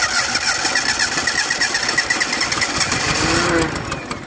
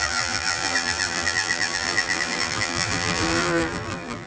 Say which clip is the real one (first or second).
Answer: first